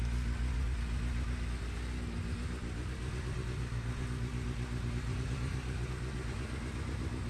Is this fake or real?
real